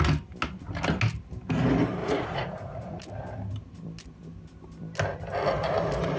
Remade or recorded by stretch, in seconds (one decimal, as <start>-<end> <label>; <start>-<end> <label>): 0.0-2.0 recorded; 2.0-3.0 remade; 3.0-6.2 recorded